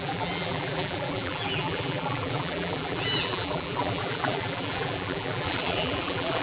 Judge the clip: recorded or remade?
remade